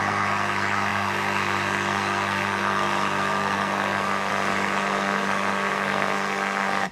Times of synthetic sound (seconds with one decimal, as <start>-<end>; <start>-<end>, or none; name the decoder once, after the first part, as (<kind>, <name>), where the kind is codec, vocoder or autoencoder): 0.0-6.9 (codec, SNAC)